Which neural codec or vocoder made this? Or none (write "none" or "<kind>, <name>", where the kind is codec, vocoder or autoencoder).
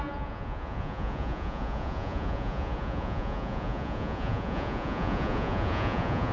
vocoder, Vocos